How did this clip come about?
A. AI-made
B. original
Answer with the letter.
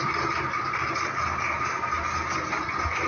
B